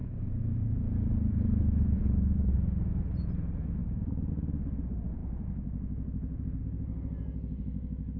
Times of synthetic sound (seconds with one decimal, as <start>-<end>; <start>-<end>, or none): 0.0-2.5; 3.8-4.3